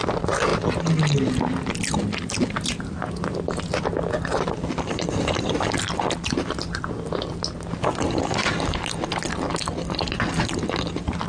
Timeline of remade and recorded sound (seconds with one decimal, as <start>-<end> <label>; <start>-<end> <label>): 0.0-11.3 recorded